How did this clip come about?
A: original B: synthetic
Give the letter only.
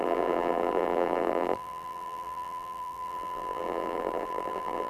B